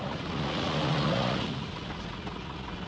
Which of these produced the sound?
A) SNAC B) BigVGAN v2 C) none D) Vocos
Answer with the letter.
D